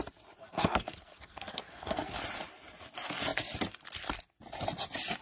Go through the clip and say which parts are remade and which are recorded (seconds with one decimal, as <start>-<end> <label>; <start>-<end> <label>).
0.0-0.4 recorded; 0.4-2.1 remade; 2.1-5.2 recorded